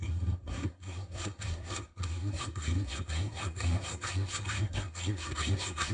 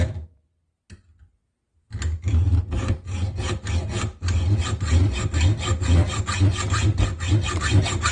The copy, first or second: first